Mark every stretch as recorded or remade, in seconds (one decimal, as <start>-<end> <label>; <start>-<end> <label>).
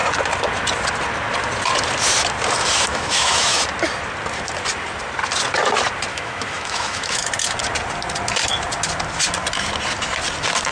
0.0-2.9 recorded; 2.9-3.6 remade; 3.6-6.1 recorded; 6.1-7.3 remade; 7.3-10.7 recorded